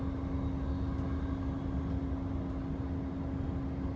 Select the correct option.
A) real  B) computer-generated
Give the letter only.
A